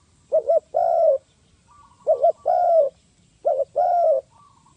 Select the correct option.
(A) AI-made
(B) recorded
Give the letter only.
B